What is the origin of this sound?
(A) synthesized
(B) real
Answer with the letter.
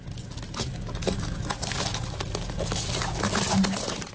B